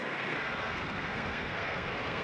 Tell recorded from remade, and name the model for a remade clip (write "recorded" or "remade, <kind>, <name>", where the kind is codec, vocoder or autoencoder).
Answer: remade, codec, SNAC